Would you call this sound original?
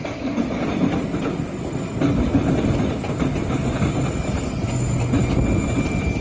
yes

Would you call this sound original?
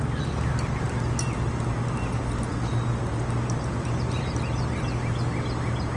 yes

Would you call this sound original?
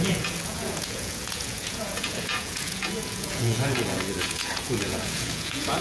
no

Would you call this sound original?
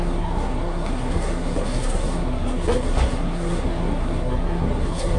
no